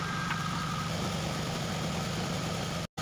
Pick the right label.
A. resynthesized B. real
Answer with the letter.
B